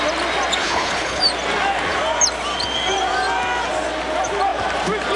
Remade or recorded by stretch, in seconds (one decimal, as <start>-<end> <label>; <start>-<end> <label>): 0.0-0.6 recorded; 0.6-1.2 remade; 1.2-5.2 recorded